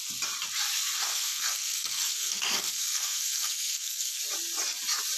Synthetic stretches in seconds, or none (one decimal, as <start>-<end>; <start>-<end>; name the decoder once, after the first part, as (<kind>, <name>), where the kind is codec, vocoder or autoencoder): 1.1-4.2 (codec, SNAC)